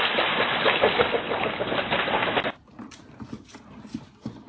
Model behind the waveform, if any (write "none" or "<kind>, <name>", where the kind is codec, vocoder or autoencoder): none